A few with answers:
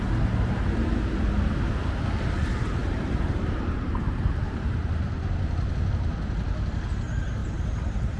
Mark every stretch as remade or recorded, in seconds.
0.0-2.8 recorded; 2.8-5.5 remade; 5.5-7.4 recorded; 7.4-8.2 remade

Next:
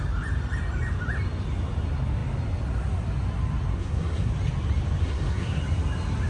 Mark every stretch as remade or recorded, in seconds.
0.0-3.7 recorded; 3.7-4.3 remade; 4.3-5.0 recorded; 5.0-5.6 remade; 5.6-6.3 recorded

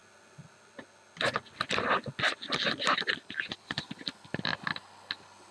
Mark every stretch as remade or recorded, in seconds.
0.0-5.5 recorded